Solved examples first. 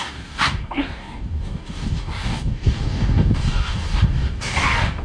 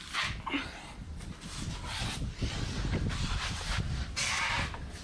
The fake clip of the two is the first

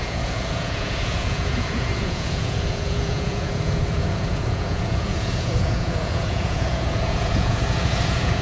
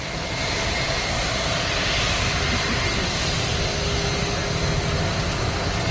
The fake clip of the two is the first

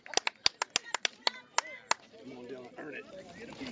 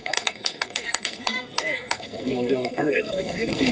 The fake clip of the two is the second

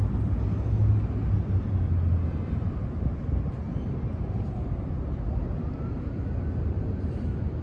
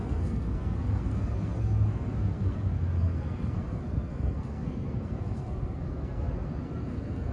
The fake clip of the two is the second